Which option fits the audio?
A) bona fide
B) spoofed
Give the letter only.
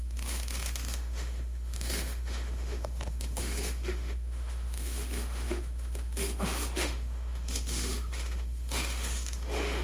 B